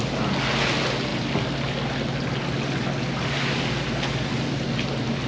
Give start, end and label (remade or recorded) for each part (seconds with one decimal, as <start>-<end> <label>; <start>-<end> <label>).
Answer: 0.0-5.3 recorded